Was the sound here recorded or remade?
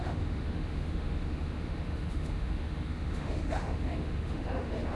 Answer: remade